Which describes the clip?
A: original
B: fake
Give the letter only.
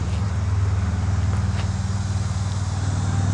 A